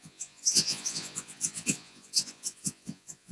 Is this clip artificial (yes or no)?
yes